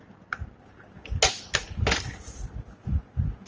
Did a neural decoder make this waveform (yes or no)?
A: no